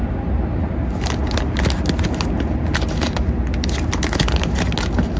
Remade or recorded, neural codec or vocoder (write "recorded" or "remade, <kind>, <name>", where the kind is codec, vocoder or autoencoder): recorded